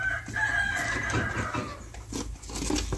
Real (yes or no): yes